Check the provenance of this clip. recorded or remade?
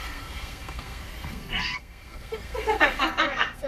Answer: remade